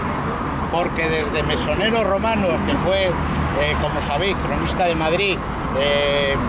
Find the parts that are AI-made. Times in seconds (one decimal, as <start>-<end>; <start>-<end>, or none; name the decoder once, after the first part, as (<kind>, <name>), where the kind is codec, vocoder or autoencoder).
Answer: none

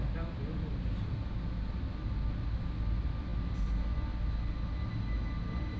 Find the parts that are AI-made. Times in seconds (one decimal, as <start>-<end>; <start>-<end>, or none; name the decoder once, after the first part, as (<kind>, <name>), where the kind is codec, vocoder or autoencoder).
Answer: none

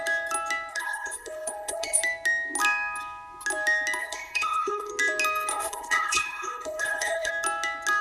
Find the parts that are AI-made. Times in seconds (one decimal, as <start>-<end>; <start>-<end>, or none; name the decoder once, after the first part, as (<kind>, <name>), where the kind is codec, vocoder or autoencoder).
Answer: 0.7-2.0 (codec, HILCodec); 4.0-4.9; 5.5-7.3

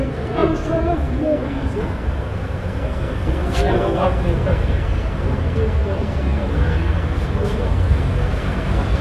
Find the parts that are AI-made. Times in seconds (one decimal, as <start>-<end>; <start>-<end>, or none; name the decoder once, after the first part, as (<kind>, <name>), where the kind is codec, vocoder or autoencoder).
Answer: 0.0-9.0 (codec, SNAC)

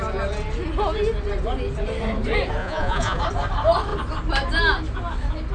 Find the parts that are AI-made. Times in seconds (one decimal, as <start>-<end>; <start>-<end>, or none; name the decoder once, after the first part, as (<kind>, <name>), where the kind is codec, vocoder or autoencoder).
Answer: 2.6-3.2 (vocoder, Vocos)

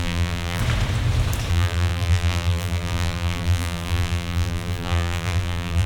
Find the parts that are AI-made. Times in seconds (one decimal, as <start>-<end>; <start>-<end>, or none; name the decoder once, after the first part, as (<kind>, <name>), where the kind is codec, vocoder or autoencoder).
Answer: 0.0-0.6 (vocoder, BigVGAN v2); 1.5-5.9